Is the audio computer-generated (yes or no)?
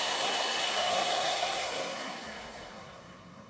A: yes